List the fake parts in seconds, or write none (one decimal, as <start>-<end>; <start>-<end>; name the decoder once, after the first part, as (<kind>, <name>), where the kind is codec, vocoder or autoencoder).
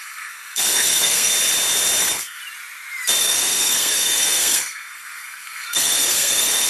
0.0-1.3 (codec, SNAC); 2.0-2.4; 3.2-6.7